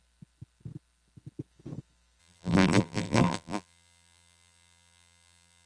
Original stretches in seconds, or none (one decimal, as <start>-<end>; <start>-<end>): 0.0-2.2